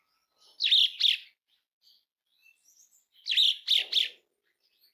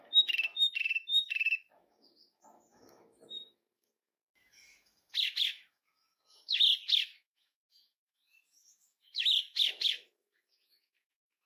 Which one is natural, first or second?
first